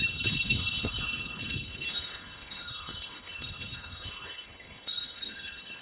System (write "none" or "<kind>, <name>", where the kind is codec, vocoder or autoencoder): codec, HILCodec